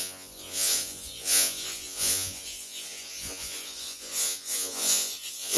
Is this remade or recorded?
remade